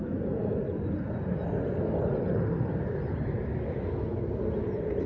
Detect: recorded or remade recorded